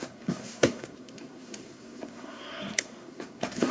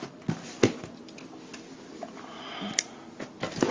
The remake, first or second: first